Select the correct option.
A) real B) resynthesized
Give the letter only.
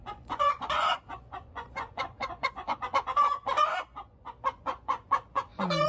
B